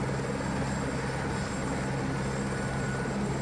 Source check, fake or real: real